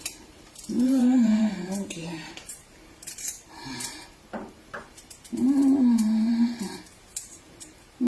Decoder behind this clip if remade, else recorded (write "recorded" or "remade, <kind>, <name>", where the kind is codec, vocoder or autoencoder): remade, vocoder, BigVGAN v2